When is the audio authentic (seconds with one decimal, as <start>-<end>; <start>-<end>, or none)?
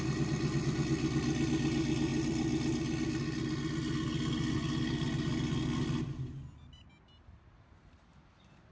0.0-8.7